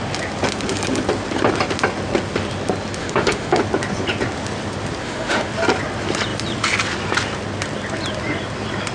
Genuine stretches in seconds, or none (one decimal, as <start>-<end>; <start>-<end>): 0.0-3.0; 3.6-5.0; 5.5-8.9